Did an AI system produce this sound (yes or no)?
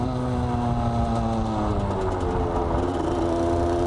no